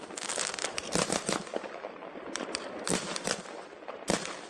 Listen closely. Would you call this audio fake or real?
real